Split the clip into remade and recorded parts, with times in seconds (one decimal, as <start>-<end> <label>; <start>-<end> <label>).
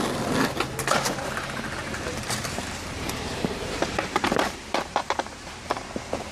0.0-1.8 recorded; 1.8-5.6 remade; 5.6-6.3 recorded